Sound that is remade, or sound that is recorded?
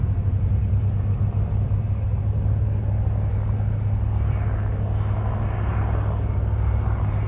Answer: recorded